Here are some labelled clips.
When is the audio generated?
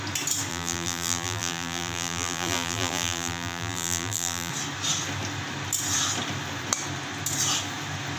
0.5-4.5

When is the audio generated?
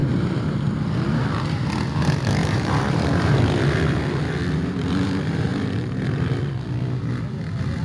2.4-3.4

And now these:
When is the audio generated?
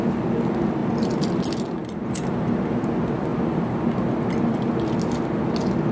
0.8-2.3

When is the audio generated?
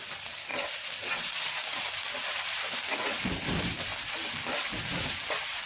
2.2-2.7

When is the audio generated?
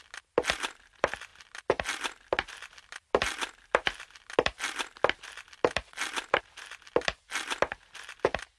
none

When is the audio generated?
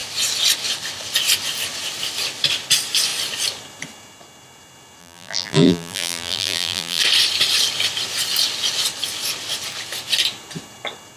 5.0-7.0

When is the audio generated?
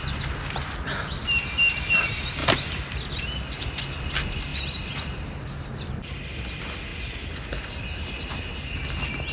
2.4-3.0; 6.9-8.3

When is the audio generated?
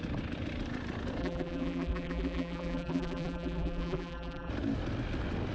1.2-4.5